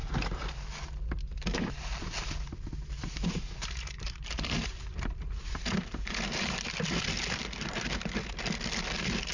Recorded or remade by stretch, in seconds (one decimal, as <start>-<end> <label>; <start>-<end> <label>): 0.0-0.7 remade; 0.7-1.5 recorded; 1.5-6.5 remade; 6.5-9.3 recorded